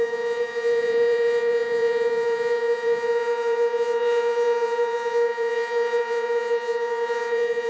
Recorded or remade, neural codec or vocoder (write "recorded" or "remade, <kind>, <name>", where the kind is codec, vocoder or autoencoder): remade, vocoder, Vocos